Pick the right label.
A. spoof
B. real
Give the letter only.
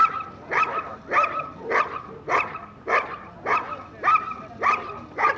B